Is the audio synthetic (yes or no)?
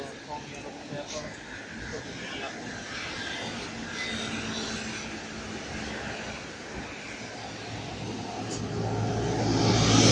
no